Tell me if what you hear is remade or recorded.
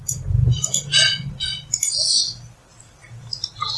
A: recorded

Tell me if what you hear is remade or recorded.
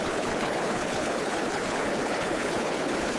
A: remade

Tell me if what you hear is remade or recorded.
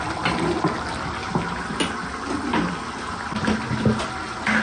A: recorded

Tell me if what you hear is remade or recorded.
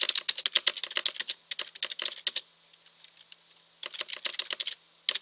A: recorded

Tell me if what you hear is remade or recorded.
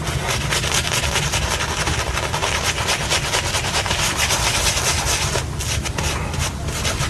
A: recorded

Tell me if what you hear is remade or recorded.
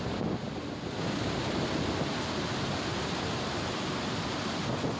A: recorded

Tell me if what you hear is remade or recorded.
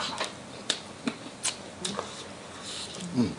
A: recorded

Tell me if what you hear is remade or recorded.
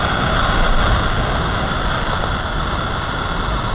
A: recorded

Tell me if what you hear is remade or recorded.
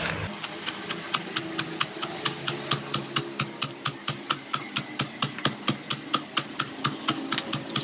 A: recorded